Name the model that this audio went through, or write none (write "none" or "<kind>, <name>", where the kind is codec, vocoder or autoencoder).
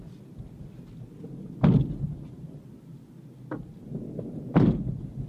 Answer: none